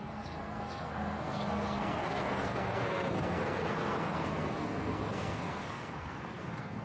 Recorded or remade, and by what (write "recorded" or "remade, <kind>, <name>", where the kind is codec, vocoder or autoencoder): remade, codec, SNAC